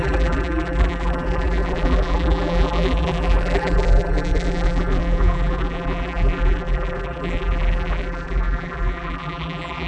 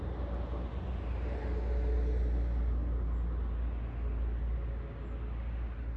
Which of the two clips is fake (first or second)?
first